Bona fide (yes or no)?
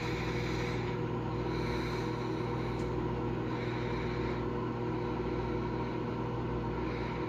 yes